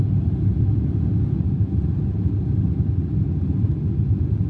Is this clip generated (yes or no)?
no